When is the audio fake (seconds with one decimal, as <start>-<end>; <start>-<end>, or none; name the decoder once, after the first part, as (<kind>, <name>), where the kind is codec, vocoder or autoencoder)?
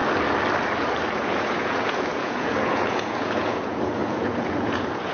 1.1-5.1 (vocoder, Vocos)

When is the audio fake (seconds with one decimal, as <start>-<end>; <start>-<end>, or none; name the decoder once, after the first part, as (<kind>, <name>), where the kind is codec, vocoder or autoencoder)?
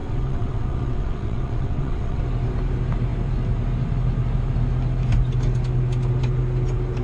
0.0-2.2 (vocoder, WaveNeXt)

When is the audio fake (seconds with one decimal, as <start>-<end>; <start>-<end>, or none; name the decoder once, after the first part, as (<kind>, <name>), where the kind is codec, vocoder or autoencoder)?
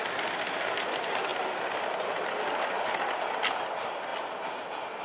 none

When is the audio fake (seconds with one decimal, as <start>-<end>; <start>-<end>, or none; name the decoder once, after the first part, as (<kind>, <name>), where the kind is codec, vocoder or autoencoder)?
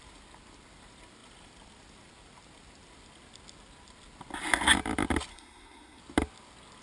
5.3-6.0 (codec, SNAC)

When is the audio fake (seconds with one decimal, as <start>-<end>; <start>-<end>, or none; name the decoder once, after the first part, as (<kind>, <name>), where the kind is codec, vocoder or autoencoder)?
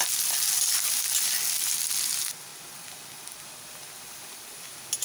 none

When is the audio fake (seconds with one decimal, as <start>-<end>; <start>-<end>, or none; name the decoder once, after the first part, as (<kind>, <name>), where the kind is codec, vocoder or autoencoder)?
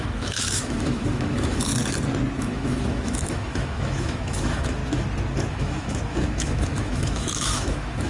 0.0-1.7 (autoencoder, DAC-VAE); 2.4-4.8; 5.5-8.1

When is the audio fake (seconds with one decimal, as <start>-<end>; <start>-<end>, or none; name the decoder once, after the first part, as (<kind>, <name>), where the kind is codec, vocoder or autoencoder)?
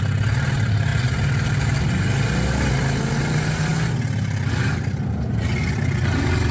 none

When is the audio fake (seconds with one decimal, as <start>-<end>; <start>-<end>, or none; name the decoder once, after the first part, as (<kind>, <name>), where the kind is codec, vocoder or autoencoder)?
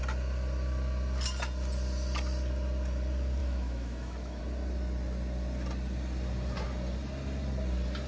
3.4-4.4 (autoencoder, DAC-VAE)